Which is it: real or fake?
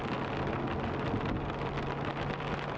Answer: real